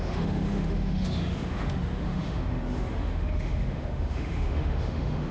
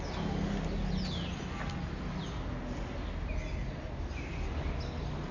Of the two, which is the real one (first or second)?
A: second